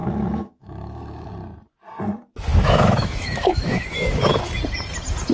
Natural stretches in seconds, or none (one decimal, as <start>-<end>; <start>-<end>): 1.3-2.5; 4.4-5.3